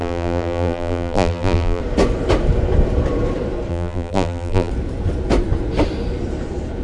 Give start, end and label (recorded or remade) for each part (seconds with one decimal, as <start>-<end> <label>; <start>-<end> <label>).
0.0-1.8 remade; 1.8-3.7 recorded; 3.7-4.7 remade; 4.7-6.8 recorded